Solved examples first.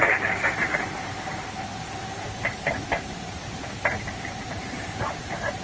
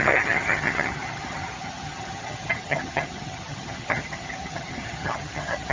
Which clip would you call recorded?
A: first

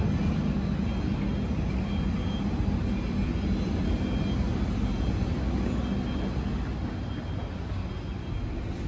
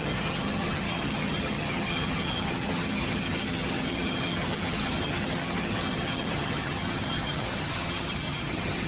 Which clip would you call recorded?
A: first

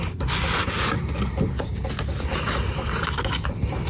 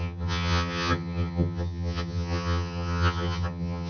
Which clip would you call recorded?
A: first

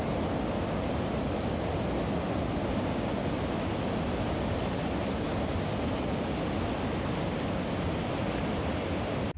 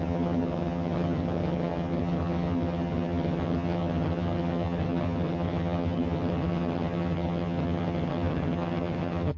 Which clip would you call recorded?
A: first